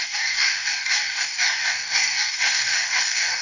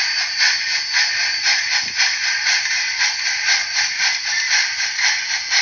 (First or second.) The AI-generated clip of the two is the first